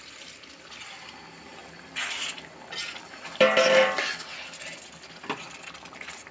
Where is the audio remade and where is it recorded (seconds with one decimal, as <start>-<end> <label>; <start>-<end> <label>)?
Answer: 0.0-1.6 remade; 1.6-5.2 recorded; 5.2-6.3 remade